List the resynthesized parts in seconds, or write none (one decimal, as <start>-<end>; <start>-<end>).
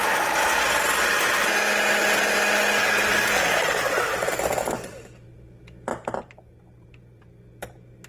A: 5.9-8.1